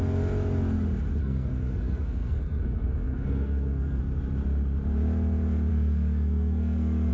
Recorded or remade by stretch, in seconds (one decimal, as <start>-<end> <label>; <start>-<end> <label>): 0.0-1.2 recorded; 1.2-4.0 remade; 4.0-5.7 recorded; 5.7-7.1 remade